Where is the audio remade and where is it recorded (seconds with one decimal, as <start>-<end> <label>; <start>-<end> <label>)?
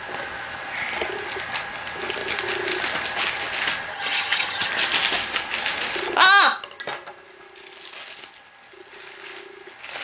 0.0-3.9 recorded; 3.9-4.7 remade; 4.7-10.0 recorded